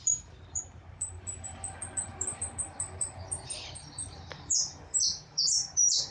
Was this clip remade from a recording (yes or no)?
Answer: yes